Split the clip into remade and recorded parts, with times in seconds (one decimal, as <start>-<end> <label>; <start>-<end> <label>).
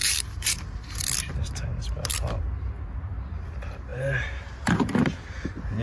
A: 0.0-1.0 remade; 1.0-3.9 recorded; 3.9-5.8 remade